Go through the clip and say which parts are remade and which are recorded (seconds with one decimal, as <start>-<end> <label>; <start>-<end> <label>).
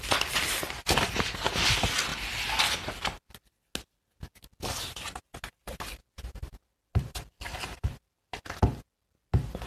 0.0-9.7 recorded